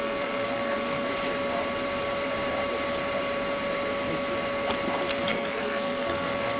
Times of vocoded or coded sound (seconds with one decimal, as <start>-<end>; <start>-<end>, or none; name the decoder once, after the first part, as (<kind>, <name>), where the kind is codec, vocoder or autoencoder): 0.0-1.1 (codec, SNAC); 5.1-6.6